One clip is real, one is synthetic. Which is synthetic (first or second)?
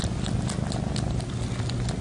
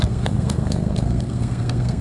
second